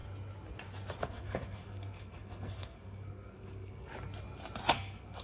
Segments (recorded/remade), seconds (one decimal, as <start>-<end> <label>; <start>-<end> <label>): 0.0-1.0 recorded; 1.0-3.9 remade; 3.9-4.7 recorded; 4.7-5.2 remade